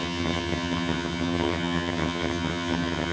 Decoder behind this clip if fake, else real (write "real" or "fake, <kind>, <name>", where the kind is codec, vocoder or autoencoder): fake, vocoder, HiFi-GAN